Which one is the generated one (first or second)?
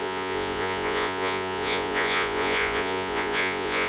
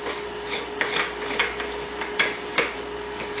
first